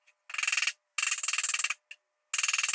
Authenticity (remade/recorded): recorded